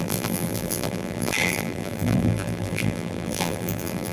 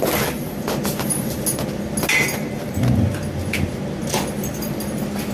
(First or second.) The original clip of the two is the second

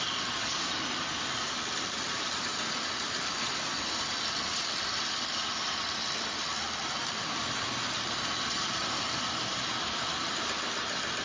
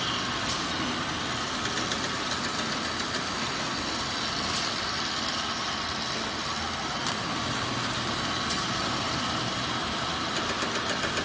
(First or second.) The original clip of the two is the second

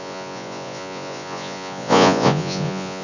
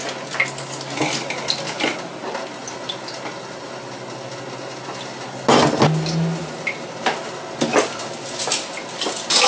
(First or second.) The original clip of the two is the second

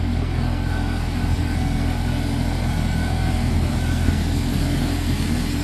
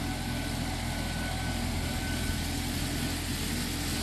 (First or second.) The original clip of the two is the second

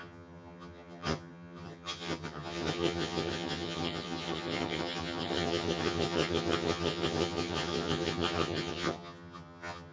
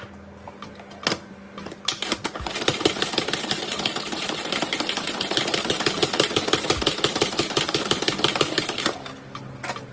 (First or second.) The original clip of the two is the second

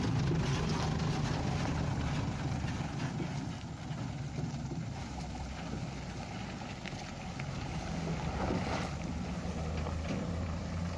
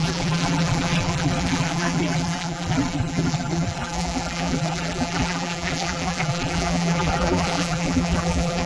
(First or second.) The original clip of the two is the first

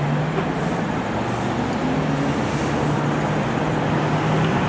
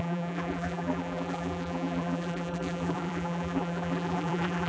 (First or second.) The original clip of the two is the first